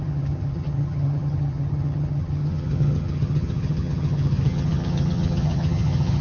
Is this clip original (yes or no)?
no